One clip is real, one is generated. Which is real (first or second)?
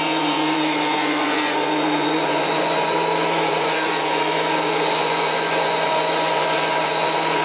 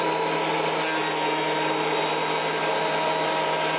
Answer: second